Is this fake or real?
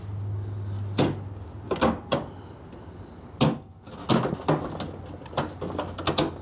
real